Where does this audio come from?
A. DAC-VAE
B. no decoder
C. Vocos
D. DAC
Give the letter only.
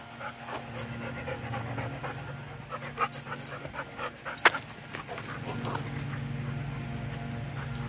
B